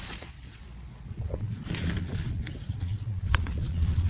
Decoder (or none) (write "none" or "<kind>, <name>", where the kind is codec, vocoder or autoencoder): vocoder, Vocos